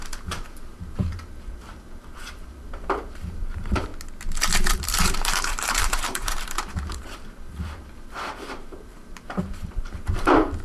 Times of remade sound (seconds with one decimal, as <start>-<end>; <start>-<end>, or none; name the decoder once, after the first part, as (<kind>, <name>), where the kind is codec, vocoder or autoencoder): 0.0-3.9 (vocoder, BigVGAN v2); 4.7-10.6